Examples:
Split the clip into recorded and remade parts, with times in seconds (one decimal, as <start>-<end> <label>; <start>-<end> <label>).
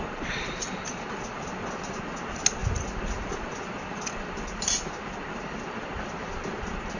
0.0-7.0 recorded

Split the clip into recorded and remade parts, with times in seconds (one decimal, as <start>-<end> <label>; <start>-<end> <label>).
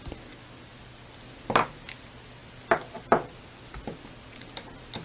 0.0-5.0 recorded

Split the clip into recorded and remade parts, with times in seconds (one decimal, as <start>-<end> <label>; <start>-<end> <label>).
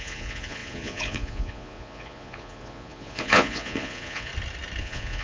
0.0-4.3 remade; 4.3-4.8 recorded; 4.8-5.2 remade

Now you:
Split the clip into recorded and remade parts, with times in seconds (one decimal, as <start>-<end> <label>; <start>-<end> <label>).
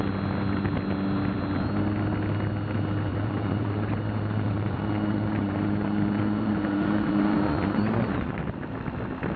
0.0-3.1 recorded; 3.1-8.4 remade; 8.4-9.4 recorded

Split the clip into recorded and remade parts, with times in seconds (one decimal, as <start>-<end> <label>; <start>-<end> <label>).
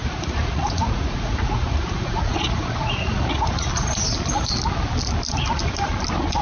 0.0-3.7 remade; 3.7-6.4 recorded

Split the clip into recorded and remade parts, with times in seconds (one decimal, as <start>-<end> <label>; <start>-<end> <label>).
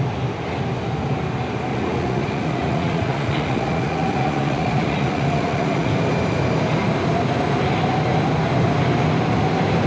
0.0-1.7 recorded; 1.7-5.9 remade; 5.9-9.9 recorded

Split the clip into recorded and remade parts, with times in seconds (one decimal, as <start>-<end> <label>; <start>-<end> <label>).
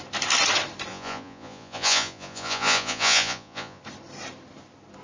0.0-0.9 recorded; 0.9-3.8 remade; 3.8-5.0 recorded